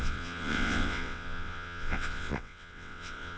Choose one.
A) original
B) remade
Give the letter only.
B